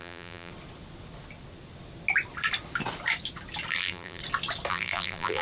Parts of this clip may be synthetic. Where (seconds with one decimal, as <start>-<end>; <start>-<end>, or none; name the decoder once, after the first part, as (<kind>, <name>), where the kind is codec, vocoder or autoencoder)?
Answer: 0.0-0.5 (vocoder, BigVGAN v2); 3.7-4.2; 4.7-5.4